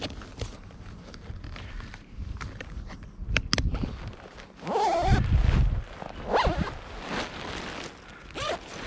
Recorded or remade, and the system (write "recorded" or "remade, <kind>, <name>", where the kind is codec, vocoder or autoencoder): recorded